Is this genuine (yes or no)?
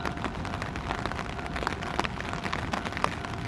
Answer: yes